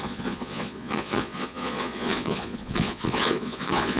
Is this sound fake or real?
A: fake